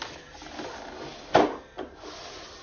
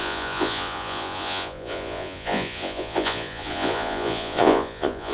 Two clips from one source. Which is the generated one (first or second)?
second